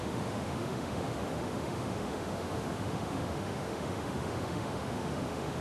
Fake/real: fake